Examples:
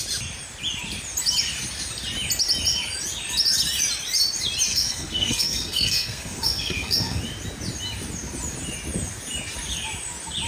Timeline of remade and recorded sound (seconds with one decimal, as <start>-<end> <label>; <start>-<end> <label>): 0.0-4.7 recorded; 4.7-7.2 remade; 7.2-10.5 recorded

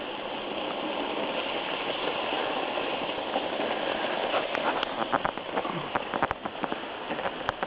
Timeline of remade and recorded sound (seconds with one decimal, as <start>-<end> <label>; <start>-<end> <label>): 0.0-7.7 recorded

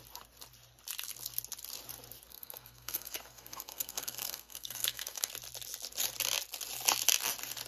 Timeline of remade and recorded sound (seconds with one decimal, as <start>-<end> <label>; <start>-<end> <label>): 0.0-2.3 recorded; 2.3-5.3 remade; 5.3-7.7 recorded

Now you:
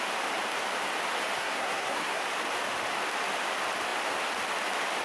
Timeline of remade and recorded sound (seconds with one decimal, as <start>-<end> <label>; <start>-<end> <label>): 0.0-1.4 recorded; 1.4-2.2 remade; 2.2-5.0 recorded